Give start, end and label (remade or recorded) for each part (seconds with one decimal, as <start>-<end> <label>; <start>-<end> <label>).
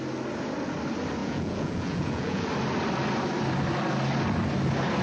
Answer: 0.0-1.2 recorded; 1.2-2.5 remade; 2.5-5.0 recorded